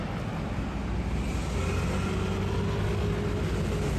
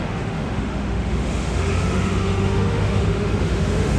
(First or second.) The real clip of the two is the first